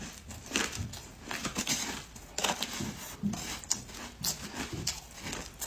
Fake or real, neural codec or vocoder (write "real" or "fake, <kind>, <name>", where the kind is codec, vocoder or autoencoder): real